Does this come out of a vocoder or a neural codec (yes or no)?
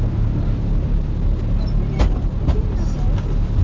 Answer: no